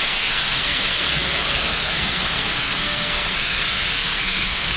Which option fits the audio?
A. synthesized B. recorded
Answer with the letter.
A